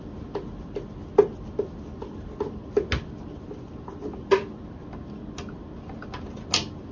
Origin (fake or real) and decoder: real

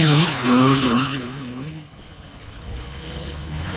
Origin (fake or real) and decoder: fake, codec, HILCodec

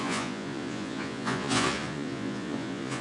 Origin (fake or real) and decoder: fake, vocoder, Vocos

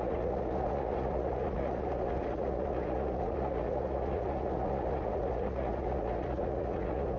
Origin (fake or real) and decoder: fake, vocoder, Vocos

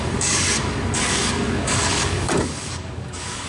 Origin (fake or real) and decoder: fake, codec, DAC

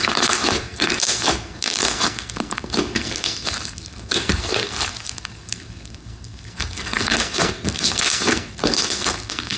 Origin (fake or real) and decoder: fake, codec, SNAC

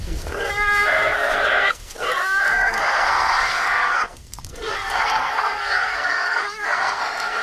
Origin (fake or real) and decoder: fake, codec, SNAC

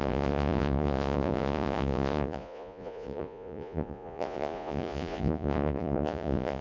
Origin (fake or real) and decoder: fake, vocoder, Vocos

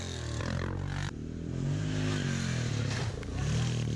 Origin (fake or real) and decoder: real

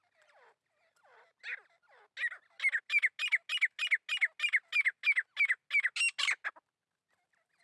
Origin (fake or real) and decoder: real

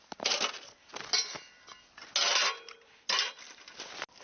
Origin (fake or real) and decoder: real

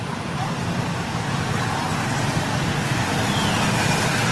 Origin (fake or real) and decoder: real